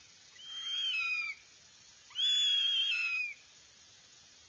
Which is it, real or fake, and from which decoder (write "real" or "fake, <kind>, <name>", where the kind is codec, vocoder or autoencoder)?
real